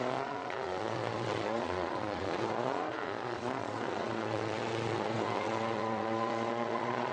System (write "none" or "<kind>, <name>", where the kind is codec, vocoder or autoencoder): vocoder, Vocos